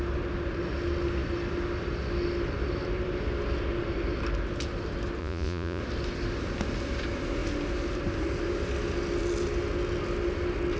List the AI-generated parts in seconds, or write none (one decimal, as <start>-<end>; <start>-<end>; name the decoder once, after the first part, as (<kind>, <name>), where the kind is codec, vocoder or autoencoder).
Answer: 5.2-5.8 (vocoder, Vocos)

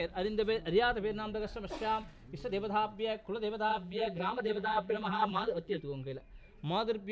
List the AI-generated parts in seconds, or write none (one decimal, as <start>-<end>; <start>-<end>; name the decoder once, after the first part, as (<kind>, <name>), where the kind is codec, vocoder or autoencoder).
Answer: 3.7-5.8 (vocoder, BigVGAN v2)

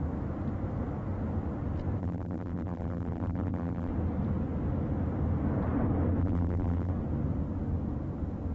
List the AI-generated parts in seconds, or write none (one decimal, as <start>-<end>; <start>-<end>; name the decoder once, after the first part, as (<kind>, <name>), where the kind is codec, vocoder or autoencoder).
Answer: 2.0-3.9 (vocoder, BigVGAN v2); 6.2-6.9